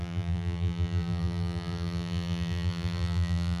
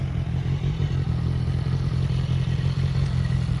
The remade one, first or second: first